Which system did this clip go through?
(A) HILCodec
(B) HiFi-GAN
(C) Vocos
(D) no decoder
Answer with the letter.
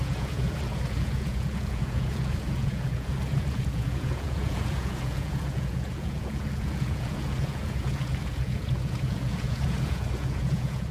C